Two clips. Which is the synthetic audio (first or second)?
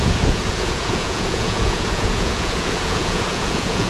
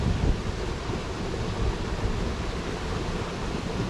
first